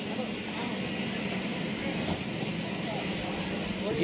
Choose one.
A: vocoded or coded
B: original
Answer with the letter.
B